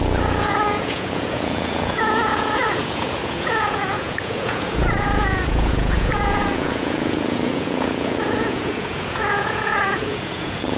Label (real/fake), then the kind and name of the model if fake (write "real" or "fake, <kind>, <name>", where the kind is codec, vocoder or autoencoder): fake, vocoder, Vocos